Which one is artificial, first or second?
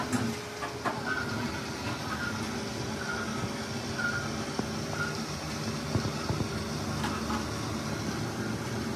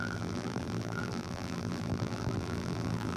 second